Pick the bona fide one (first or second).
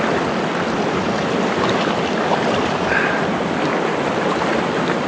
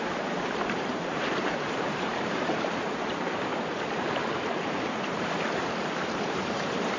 first